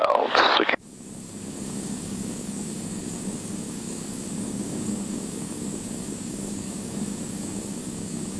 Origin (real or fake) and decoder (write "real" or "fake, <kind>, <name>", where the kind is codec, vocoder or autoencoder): fake, codec, DAC